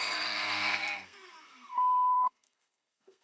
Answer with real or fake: fake